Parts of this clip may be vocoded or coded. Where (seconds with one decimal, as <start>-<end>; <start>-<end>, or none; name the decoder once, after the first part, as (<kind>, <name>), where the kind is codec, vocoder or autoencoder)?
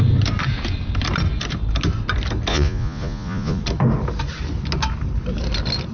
2.5-3.6 (vocoder, Vocos)